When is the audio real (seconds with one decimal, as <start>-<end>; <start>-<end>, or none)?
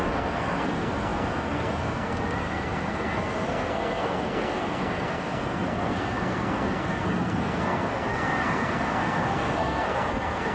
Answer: none